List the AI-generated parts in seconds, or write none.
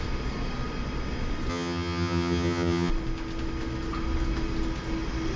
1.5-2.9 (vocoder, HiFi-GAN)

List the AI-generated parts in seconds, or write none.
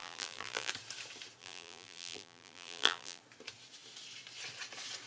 0.0-0.7 (vocoder, BigVGAN v2); 1.4-3.2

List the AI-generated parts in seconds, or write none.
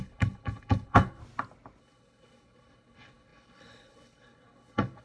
0.0-1.2 (codec, HILCodec); 1.8-5.0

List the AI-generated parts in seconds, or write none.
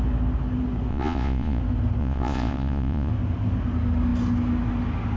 0.9-1.6 (vocoder, Vocos); 2.0-3.1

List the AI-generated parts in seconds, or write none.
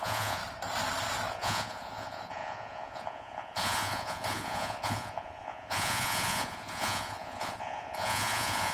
0.0-0.4 (vocoder, Vocos); 1.3-8.7